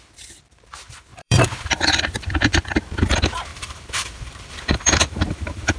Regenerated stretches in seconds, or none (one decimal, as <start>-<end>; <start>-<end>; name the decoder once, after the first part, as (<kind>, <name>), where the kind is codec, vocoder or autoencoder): 1.1-2.0 (vocoder, BigVGAN v2); 3.5-5.8